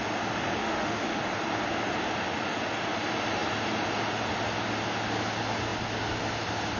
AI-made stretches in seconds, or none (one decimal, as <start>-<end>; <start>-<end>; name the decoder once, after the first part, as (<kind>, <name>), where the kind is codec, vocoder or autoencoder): 0.6-1.2 (autoencoder, DAC-VAE)